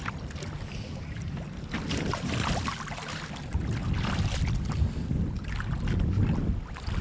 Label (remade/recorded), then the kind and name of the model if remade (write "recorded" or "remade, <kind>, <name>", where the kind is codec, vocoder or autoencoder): recorded